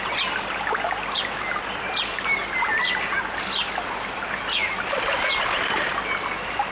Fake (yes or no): no